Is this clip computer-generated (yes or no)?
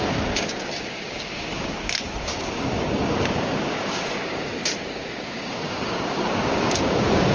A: yes